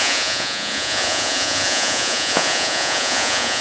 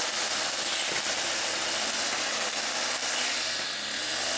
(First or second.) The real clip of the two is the second